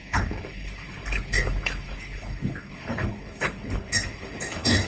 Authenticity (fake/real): fake